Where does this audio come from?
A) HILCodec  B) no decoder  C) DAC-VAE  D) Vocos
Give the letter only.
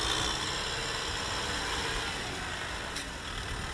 B